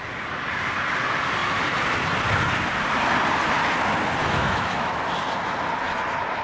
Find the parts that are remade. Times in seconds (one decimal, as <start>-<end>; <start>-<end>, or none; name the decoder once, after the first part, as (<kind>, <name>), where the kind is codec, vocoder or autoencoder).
4.2-5.0 (autoencoder, DAC-VAE)